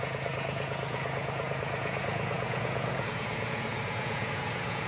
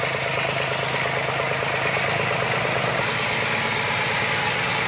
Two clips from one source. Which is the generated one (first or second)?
first